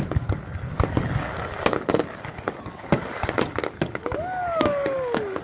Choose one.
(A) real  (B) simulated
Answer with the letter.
B